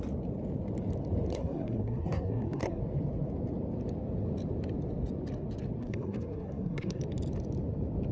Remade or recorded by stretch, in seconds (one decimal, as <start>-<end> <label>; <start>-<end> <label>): 0.0-1.3 recorded; 1.3-2.8 remade; 2.8-5.8 recorded; 5.8-7.0 remade; 7.0-8.1 recorded